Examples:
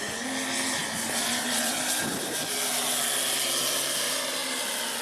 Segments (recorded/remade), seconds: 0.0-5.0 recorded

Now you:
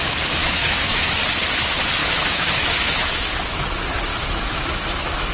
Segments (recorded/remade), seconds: 0.0-0.4 recorded; 0.4-1.1 remade; 1.1-2.0 recorded; 2.0-3.3 remade; 3.3-4.1 recorded; 4.1-5.3 remade

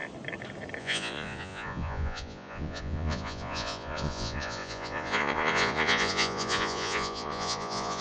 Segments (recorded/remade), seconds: 0.0-0.8 recorded; 0.8-8.0 remade

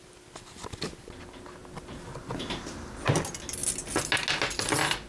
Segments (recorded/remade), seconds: 0.0-5.1 recorded

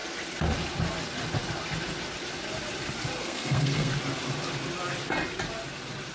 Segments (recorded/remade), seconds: 0.0-3.2 recorded; 3.2-3.9 remade; 3.9-6.1 recorded